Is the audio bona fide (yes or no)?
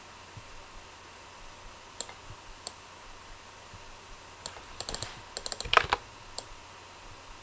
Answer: yes